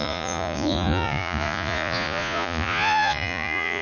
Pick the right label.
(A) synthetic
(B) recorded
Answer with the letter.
A